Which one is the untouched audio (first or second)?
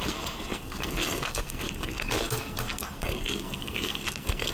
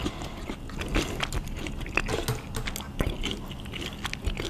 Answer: second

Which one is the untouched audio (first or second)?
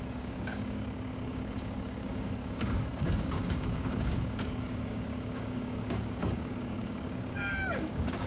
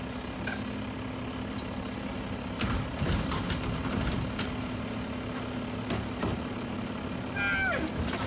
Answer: second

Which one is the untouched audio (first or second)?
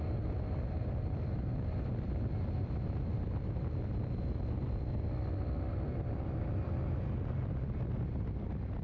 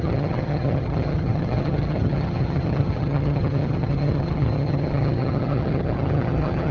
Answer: first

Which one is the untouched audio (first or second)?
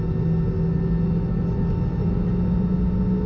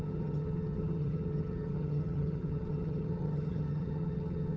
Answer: first